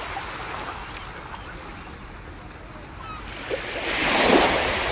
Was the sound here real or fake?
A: real